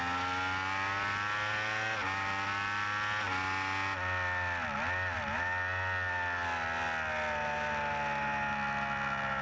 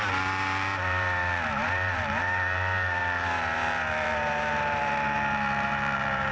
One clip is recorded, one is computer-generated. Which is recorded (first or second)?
first